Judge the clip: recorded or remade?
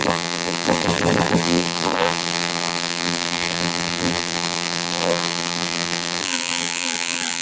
remade